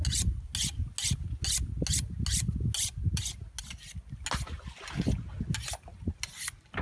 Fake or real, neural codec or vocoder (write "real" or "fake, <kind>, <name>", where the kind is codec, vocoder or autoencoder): real